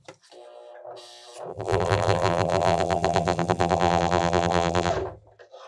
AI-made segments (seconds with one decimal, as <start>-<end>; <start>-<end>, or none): 1.5-4.9